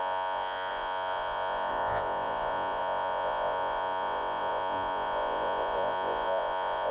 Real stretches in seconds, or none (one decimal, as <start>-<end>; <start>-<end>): none